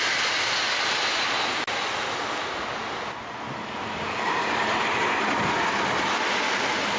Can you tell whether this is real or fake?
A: real